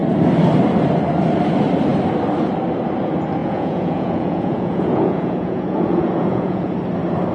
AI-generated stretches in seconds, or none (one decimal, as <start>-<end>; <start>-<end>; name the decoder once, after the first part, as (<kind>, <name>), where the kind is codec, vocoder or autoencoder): 3.4-6.7 (vocoder, Vocos)